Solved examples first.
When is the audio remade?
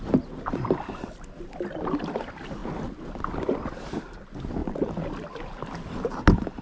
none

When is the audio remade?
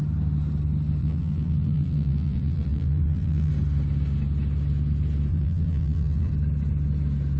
1.0-3.5 (vocoder, BigVGAN v2); 5.3-6.3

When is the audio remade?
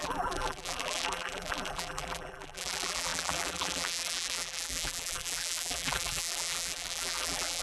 0.0-7.6 (vocoder, BigVGAN v2)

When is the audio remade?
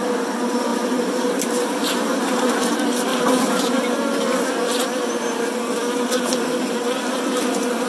0.7-2.4 (vocoder, BigVGAN v2); 3.1-3.8